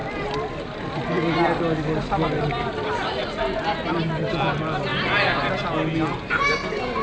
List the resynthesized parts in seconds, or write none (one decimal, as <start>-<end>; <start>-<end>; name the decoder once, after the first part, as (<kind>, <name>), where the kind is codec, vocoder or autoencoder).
0.0-4.2 (vocoder, BigVGAN v2); 4.9-5.5